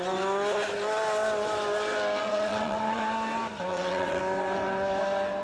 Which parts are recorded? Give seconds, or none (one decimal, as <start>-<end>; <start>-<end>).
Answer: 0.0-2.2; 3.0-3.7; 4.2-5.4